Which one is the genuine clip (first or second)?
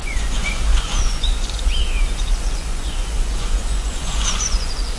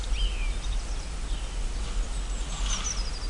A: second